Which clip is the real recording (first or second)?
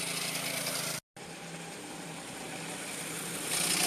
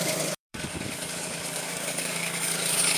first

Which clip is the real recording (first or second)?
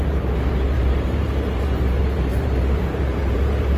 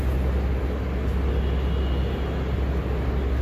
second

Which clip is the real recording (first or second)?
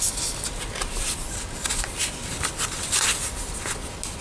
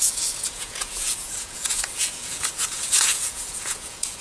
first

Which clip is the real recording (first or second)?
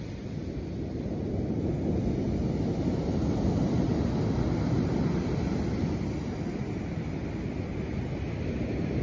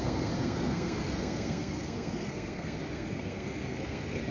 first